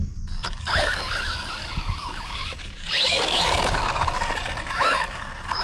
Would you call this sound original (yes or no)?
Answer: no